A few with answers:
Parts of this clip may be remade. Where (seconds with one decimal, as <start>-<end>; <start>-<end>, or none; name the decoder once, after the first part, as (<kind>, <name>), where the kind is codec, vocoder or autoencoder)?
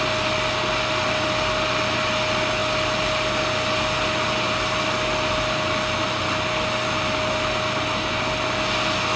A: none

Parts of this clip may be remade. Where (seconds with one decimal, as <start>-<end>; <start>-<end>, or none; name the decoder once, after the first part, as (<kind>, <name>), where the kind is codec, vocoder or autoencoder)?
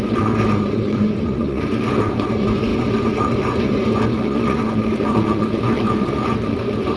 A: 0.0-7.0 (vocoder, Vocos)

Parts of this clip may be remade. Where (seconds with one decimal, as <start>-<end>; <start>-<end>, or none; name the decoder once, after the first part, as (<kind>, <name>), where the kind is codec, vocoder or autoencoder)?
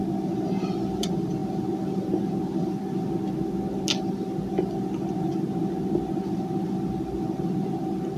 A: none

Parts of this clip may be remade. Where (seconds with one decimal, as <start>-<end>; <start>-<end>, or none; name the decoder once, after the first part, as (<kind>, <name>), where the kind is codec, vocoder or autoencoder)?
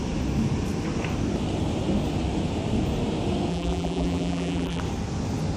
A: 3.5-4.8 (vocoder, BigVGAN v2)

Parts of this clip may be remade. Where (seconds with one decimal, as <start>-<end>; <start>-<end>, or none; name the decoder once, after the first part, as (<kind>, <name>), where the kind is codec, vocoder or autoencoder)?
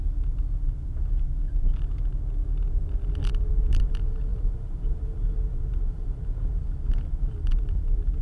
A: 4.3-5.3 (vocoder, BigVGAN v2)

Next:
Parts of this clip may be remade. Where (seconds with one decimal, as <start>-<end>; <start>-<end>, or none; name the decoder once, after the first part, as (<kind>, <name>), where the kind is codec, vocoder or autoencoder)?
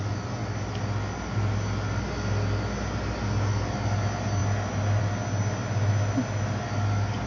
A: none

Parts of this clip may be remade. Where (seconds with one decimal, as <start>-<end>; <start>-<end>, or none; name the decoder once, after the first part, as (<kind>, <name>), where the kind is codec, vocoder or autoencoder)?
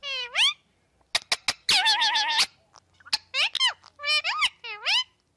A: none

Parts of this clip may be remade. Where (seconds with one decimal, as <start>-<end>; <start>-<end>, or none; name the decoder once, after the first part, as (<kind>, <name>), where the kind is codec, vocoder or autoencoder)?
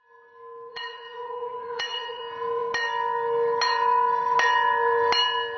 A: 0.7-2.2 (vocoder, Vocos)